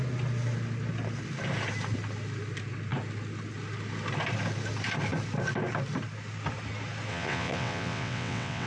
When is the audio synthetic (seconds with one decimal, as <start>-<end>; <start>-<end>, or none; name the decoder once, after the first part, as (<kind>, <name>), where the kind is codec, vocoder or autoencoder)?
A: 7.1-8.7 (vocoder, WaveNeXt)

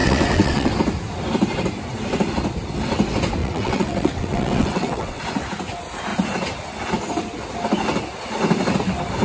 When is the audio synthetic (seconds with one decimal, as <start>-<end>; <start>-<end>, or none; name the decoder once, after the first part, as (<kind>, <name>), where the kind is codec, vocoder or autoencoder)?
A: 0.0-0.7 (vocoder, WaveNeXt); 3.4-5.2

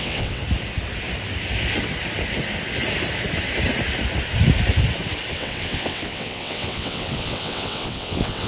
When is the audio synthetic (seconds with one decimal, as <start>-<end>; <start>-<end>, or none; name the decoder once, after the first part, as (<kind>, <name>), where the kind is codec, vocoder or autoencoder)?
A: 0.0-0.4 (vocoder, WaveNeXt); 5.3-8.5